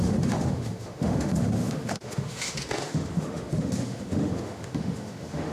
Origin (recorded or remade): remade